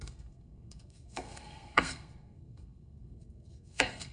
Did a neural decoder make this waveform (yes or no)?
yes